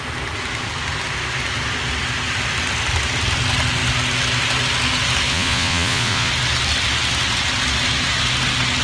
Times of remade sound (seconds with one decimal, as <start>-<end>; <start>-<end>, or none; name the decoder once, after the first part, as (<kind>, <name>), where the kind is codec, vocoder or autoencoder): 5.3-6.3 (vocoder, Vocos)